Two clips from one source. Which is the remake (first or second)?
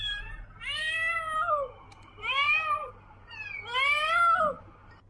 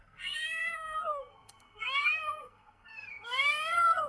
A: second